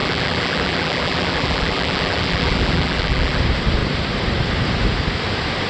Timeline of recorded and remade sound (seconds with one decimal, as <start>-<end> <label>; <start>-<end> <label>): 0.0-3.4 remade; 3.4-5.7 recorded